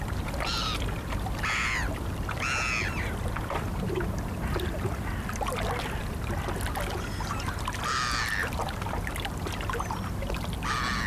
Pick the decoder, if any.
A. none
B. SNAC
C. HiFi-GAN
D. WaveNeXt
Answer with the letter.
A